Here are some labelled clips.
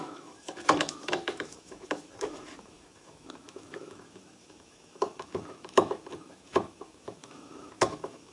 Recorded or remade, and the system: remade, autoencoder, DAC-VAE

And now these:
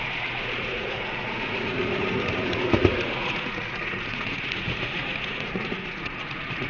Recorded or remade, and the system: remade, vocoder, Vocos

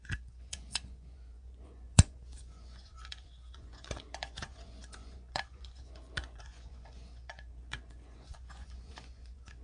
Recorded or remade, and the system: remade, vocoder, Vocos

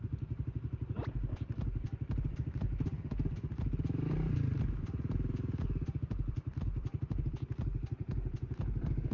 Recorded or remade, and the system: recorded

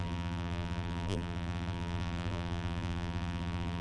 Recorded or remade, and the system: remade, vocoder, BigVGAN v2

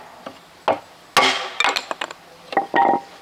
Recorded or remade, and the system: recorded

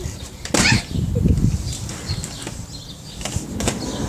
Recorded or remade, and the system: recorded